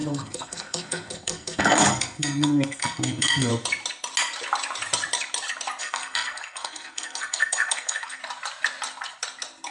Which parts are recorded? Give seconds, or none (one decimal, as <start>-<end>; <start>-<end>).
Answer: 3.5-5.8; 8.2-9.7